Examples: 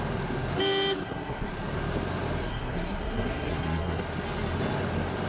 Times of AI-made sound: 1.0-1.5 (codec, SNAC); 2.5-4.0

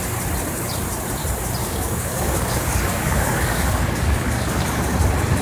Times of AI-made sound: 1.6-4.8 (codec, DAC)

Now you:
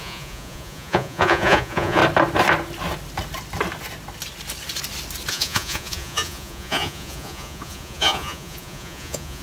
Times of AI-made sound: 0.0-2.0 (vocoder, Vocos); 5.3-9.4